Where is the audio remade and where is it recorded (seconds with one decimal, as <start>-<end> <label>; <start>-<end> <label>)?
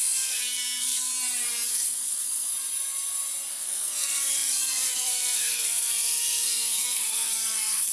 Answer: 0.0-1.1 remade; 1.1-1.7 recorded; 1.7-2.5 remade; 2.5-3.5 recorded; 3.5-7.9 remade